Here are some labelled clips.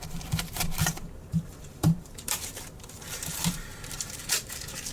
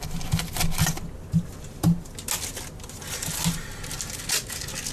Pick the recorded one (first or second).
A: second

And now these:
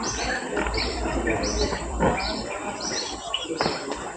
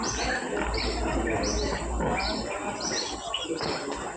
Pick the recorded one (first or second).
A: second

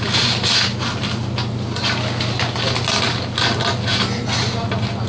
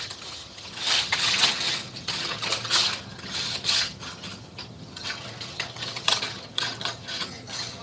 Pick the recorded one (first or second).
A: first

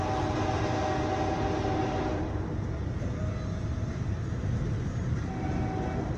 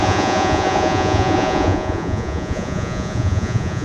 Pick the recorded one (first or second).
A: first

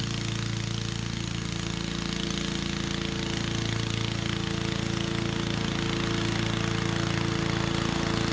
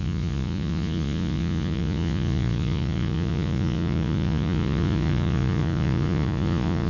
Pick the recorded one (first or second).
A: first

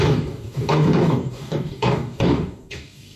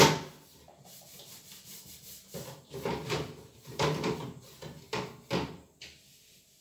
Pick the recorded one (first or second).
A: second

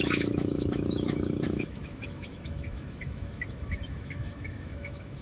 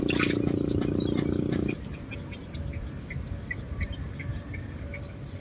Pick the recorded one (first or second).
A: second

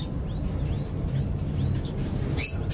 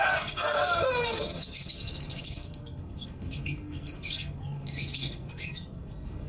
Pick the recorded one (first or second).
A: first